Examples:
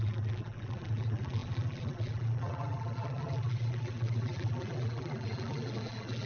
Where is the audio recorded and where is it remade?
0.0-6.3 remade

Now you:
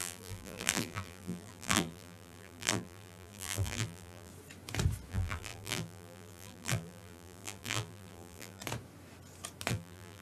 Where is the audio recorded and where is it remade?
0.0-4.3 remade; 4.3-5.1 recorded; 5.1-8.6 remade; 8.6-9.7 recorded; 9.7-10.2 remade

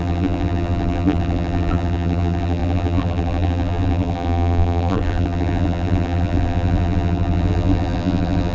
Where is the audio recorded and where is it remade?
0.0-8.5 remade

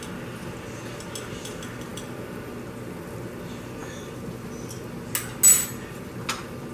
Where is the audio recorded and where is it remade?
0.0-1.9 recorded; 1.9-2.5 remade; 2.5-6.7 recorded

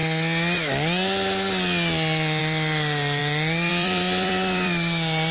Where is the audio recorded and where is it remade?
0.0-2.4 recorded; 2.4-5.3 remade

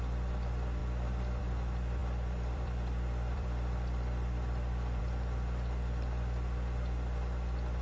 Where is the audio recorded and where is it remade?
0.0-0.8 recorded; 0.8-1.4 remade; 1.4-2.0 recorded; 2.0-5.0 remade; 5.0-7.8 recorded

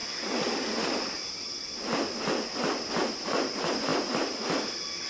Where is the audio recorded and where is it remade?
0.0-5.1 recorded